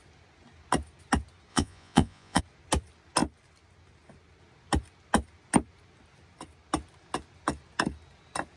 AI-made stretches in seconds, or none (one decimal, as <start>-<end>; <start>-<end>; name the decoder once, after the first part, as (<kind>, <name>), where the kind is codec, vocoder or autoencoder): 1.5-2.4 (vocoder, Vocos)

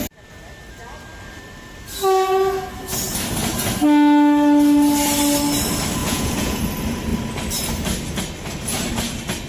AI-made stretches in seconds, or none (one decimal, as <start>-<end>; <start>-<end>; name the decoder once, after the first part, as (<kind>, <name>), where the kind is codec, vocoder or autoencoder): 6.0-6.6 (vocoder, Vocos)

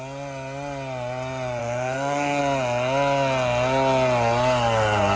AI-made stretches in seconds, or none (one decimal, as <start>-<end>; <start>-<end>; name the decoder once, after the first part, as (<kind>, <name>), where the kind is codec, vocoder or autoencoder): 1.6-2.4 (codec, SNAC)